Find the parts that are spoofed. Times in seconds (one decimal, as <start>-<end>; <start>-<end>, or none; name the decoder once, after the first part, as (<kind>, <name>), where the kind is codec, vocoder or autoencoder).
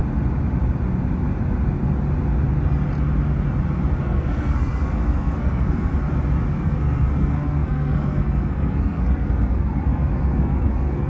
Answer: 4.0-5.9 (codec, SNAC); 6.5-11.1